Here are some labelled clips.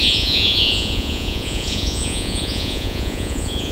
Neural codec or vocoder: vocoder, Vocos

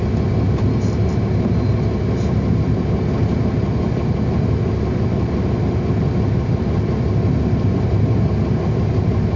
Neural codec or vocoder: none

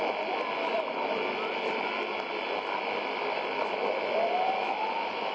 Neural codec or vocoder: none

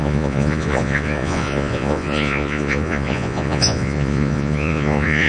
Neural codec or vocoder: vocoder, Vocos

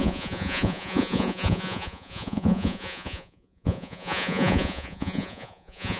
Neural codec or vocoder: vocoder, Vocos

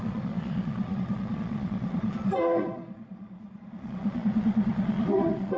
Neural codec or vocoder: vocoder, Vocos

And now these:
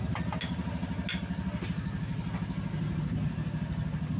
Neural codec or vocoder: none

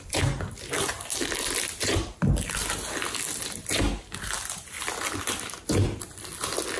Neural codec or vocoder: none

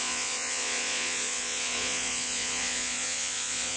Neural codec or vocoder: vocoder, Vocos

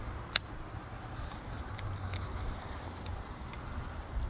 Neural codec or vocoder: none